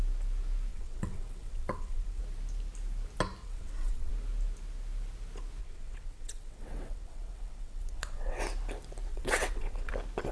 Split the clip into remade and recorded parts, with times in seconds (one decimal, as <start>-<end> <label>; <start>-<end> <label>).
0.0-0.7 recorded; 0.7-2.2 remade; 2.2-3.4 recorded; 3.4-4.1 remade; 4.1-5.6 recorded; 5.6-8.4 remade; 8.4-9.1 recorded; 9.1-9.9 remade; 9.9-10.3 recorded